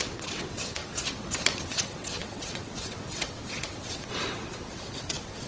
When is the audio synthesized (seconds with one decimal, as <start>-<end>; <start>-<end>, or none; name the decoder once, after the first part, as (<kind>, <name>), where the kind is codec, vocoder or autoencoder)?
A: 0.0-5.5 (vocoder, WaveNeXt)